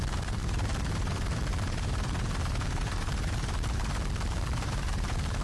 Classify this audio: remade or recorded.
remade